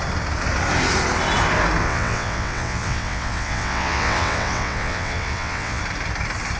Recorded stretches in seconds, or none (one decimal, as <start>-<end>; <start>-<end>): 0.0-1.8; 5.8-6.6